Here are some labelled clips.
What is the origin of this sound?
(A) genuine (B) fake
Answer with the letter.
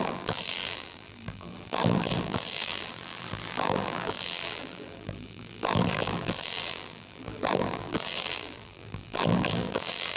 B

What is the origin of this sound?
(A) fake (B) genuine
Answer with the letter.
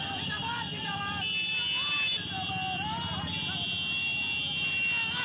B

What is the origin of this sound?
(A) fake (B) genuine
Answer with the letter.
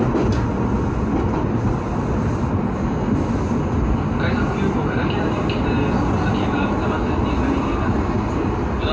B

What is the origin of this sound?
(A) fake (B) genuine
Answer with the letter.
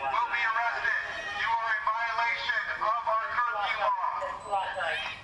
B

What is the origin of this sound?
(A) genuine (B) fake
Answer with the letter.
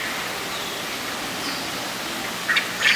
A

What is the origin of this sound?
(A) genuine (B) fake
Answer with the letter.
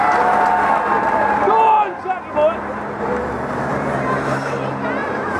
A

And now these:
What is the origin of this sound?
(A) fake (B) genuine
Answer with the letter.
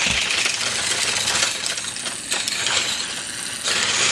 B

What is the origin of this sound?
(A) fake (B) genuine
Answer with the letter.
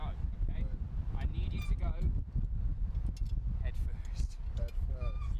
B